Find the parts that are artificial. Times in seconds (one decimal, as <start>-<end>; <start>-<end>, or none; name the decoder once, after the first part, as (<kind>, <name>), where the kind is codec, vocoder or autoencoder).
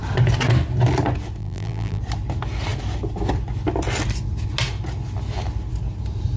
1.4-2.0 (vocoder, BigVGAN v2)